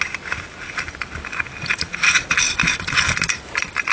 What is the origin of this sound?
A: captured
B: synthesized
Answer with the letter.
A